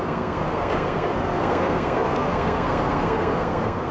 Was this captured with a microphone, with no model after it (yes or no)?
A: no